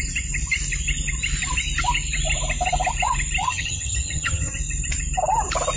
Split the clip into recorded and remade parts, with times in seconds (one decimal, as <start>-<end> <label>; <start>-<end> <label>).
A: 0.0-3.4 recorded; 3.4-4.5 remade; 4.5-5.8 recorded